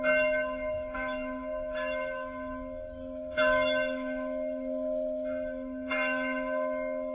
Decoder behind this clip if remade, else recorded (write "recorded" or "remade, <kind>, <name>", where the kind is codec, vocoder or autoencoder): remade, autoencoder, DAC-VAE